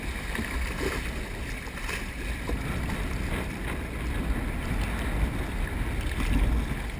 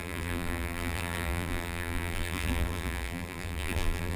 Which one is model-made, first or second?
second